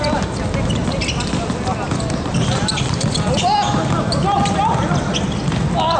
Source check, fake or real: real